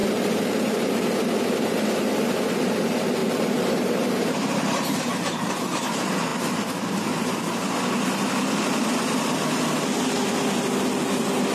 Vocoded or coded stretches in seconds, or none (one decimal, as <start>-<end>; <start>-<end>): 0.0-1.0; 3.2-5.5